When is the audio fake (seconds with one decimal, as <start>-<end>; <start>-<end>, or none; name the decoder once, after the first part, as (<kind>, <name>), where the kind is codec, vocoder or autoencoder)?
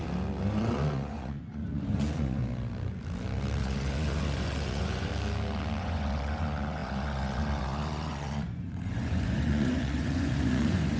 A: 0.6-2.4 (vocoder, Vocos); 3.6-5.1; 5.8-11.0